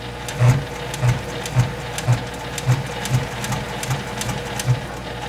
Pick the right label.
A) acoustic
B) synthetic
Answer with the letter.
A